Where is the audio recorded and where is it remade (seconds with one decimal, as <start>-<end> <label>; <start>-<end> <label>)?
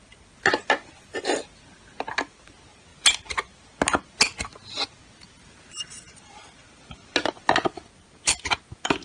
0.0-9.0 recorded